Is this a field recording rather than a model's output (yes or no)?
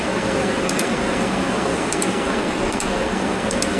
no